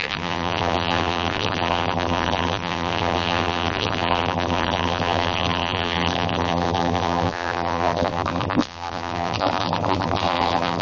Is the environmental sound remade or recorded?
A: remade